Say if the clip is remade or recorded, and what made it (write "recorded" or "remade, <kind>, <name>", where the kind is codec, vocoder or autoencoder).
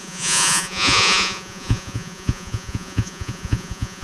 remade, vocoder, Vocos